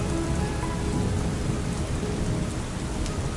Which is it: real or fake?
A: fake